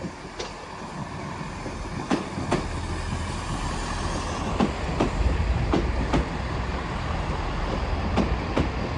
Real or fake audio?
real